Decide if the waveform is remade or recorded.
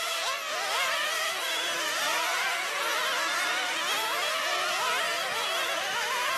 recorded